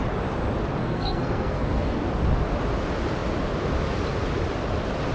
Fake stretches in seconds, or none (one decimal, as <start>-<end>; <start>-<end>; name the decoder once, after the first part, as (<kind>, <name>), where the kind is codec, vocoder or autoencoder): 0.8-2.0 (codec, SNAC)

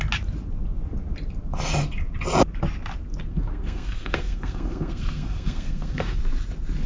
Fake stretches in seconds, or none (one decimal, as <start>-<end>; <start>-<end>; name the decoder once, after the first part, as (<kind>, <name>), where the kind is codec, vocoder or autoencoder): 3.3-6.2 (codec, SNAC)

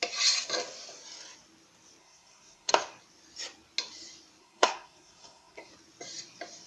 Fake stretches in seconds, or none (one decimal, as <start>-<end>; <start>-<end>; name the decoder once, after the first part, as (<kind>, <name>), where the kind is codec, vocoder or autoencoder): 2.0-2.7 (codec, SNAC); 4.4-5.7

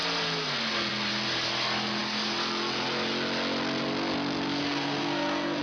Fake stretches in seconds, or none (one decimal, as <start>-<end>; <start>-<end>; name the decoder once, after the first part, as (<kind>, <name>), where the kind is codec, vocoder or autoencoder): 4.6-5.6 (codec, SNAC)

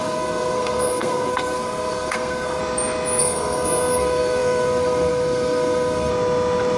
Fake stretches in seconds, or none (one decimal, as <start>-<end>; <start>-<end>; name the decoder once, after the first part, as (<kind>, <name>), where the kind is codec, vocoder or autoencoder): 0.0-2.6 (codec, SNAC); 3.2-6.1

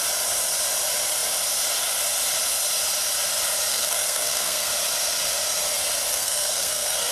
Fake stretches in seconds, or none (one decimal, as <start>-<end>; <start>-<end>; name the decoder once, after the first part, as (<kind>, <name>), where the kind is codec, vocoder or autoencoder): 3.7-4.7 (codec, SNAC); 6.1-7.1